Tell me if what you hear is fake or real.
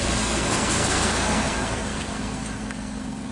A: fake